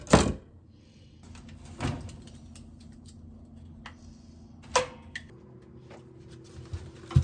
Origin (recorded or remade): recorded